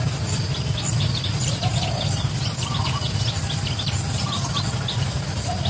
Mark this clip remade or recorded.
recorded